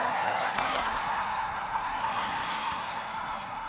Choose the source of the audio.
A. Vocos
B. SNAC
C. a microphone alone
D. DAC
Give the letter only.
B